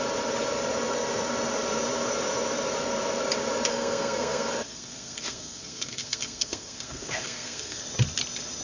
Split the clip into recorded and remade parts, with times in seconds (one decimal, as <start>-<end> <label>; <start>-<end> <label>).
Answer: 0.0-3.7 recorded; 3.7-7.8 remade; 7.8-8.6 recorded